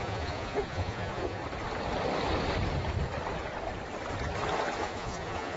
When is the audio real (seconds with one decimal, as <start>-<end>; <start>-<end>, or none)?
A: 1.4-4.8